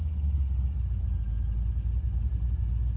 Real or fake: real